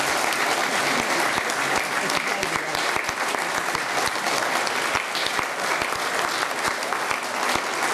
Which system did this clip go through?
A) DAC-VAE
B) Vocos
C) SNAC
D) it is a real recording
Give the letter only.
D